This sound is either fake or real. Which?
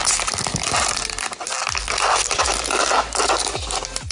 real